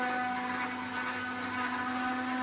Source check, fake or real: real